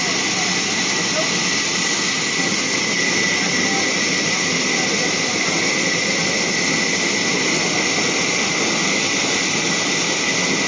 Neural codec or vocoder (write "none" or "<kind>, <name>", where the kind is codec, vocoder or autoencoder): none